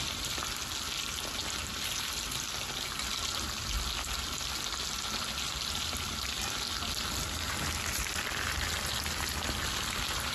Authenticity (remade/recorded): recorded